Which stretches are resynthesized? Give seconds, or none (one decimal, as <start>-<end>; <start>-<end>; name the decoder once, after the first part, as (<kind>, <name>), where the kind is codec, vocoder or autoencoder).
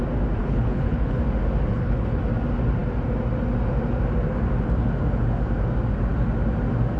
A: 0.4-1.2 (codec, HILCodec); 1.7-2.2